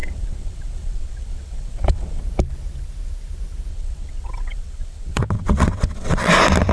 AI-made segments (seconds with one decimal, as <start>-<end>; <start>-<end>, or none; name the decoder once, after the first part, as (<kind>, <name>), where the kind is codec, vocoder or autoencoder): 0.0-2.2 (vocoder, WaveNeXt); 3.7-6.3